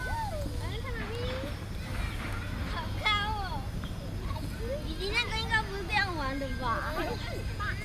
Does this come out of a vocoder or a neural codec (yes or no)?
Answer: no